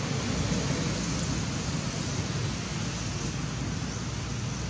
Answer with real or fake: real